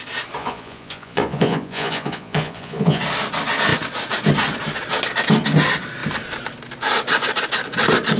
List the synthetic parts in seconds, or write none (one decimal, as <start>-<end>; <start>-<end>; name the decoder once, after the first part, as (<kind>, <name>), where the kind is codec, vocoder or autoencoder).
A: 0.4-3.0 (vocoder, Vocos)